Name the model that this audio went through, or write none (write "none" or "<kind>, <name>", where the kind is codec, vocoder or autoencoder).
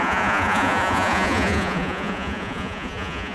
vocoder, Vocos